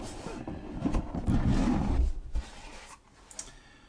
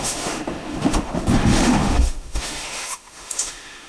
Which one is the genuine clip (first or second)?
first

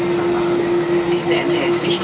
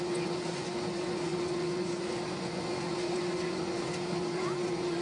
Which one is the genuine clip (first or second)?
first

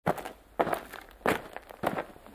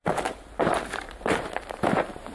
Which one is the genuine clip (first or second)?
first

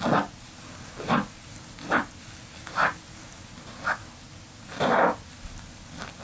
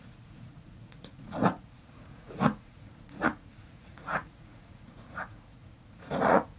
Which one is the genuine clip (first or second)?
first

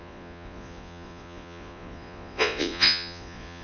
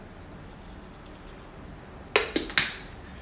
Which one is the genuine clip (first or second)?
second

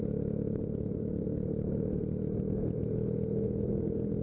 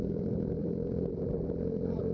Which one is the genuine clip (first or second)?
first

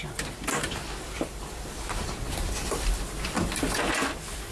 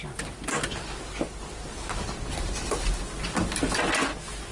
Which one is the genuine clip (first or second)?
second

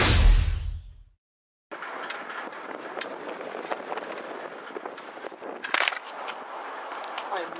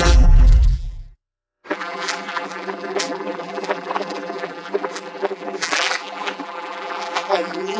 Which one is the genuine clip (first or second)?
first